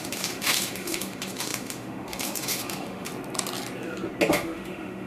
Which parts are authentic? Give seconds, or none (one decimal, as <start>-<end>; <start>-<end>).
3.1-4.3